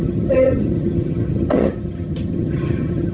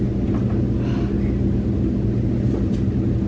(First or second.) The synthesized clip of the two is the first